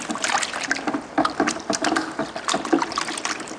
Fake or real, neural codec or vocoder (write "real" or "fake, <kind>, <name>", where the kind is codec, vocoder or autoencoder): real